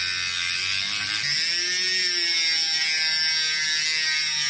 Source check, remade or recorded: recorded